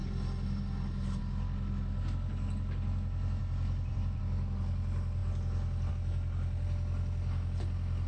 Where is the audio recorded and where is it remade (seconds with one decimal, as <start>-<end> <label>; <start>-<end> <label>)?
0.0-3.4 recorded; 3.4-4.2 remade; 4.2-8.1 recorded